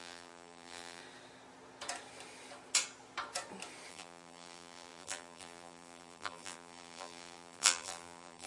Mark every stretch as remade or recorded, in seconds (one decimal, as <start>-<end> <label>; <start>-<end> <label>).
0.0-1.0 remade; 1.0-3.9 recorded; 3.9-8.5 remade